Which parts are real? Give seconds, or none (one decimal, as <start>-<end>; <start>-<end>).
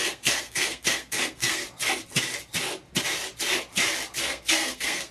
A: 1.6-4.2